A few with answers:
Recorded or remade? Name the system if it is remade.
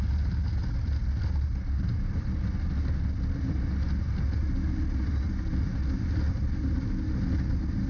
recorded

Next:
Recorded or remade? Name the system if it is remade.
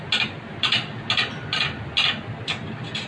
recorded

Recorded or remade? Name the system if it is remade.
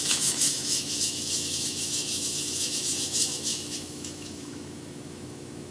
remade, autoencoder, DAC-VAE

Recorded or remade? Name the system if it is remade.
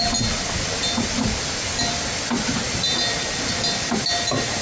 recorded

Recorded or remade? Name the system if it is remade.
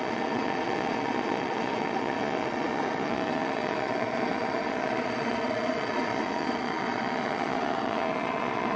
remade, vocoder, Vocos